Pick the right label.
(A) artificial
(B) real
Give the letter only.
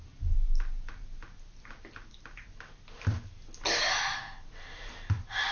B